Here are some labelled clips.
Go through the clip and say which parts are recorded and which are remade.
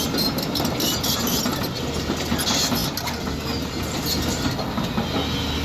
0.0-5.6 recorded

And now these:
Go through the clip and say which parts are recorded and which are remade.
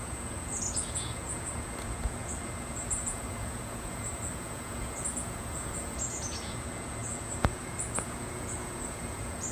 0.0-9.5 remade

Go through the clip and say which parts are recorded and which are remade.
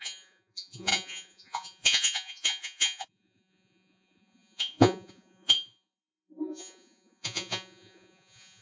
0.0-8.6 remade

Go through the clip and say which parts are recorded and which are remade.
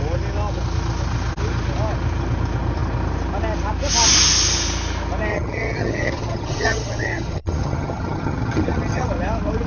0.0-5.3 recorded; 5.3-9.1 remade; 9.1-9.7 recorded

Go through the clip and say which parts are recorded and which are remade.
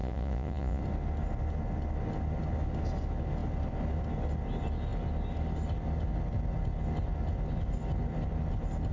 0.0-0.8 remade; 0.8-8.9 recorded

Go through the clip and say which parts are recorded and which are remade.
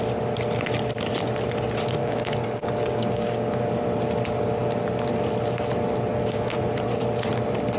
0.0-2.0 recorded; 2.0-3.5 remade; 3.5-6.1 recorded; 6.1-6.6 remade; 6.6-7.8 recorded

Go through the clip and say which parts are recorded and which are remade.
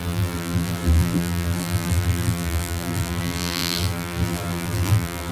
0.0-5.3 remade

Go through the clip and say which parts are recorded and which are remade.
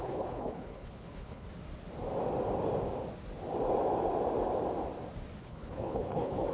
0.0-1.5 remade; 1.5-5.4 recorded; 5.4-6.5 remade